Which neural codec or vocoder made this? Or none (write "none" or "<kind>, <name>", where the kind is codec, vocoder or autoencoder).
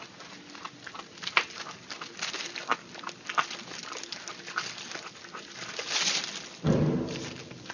none